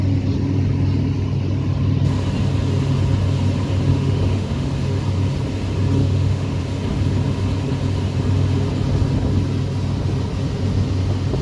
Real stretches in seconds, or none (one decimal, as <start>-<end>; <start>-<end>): 0.0-3.9; 4.7-6.0; 6.6-11.4